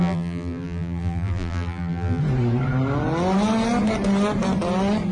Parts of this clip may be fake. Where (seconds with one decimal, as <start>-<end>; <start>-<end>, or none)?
0.0-2.2